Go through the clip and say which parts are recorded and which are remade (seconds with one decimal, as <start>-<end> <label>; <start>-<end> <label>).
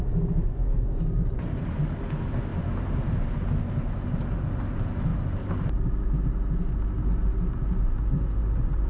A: 0.0-0.5 recorded; 0.5-1.0 remade; 1.0-8.9 recorded